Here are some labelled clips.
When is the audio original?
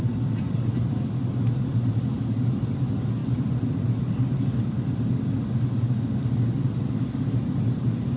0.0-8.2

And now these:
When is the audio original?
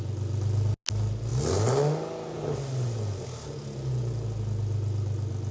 0.0-5.5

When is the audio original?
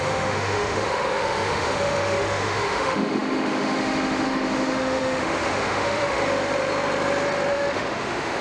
6.2-7.5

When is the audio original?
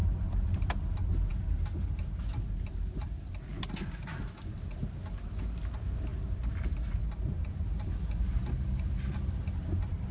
0.0-10.1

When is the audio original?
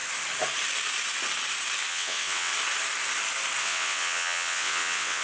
0.0-1.9; 2.5-3.6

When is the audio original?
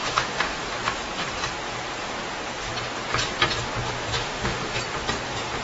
0.6-4.2; 4.8-5.6